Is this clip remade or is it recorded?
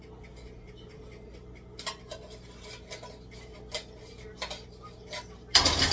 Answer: recorded